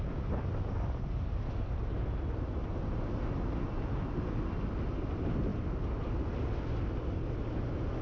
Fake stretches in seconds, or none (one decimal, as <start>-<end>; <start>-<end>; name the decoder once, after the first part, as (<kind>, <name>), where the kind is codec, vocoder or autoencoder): none